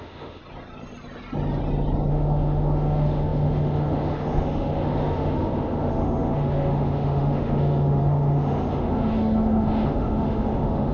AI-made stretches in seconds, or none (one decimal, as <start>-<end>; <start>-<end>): 0.0-0.4; 2.1-10.9